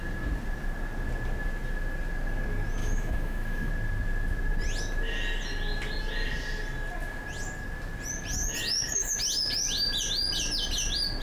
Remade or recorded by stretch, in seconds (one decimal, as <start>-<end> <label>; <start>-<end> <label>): 0.0-2.8 recorded; 2.8-3.7 remade; 3.7-8.6 recorded; 8.6-9.2 remade; 9.2-11.2 recorded

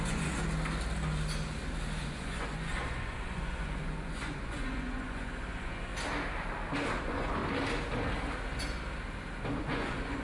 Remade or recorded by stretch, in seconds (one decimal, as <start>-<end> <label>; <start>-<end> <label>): 0.0-0.4 remade; 0.4-2.0 recorded; 2.0-5.9 remade; 5.9-7.0 recorded; 7.0-7.4 remade; 7.4-9.6 recorded; 9.6-10.2 remade

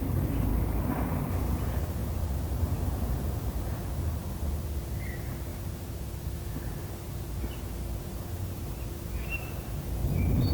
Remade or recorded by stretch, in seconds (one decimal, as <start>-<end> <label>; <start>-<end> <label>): 0.0-10.5 recorded

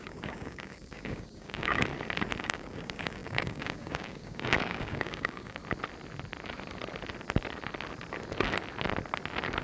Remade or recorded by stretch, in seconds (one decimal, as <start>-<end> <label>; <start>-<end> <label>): 0.0-1.9 remade; 1.9-2.4 recorded; 2.4-5.6 remade; 5.6-9.6 recorded